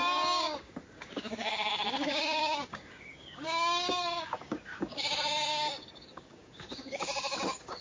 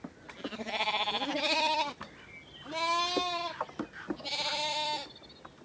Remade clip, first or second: first